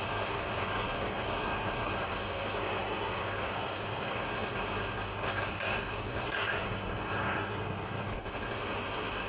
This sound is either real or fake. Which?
fake